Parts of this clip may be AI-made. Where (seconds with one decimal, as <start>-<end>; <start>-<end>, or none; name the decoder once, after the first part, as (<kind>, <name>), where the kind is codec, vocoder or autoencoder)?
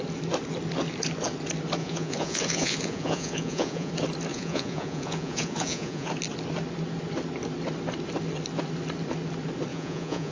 1.8-3.9 (vocoder, Vocos); 4.3-6.1; 9.7-10.3